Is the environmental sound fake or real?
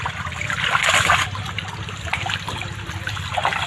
real